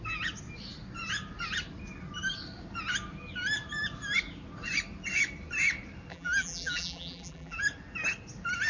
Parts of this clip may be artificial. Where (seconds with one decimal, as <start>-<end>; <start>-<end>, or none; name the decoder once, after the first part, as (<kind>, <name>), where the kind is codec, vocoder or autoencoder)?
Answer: 6.1-7.6 (vocoder, BigVGAN v2)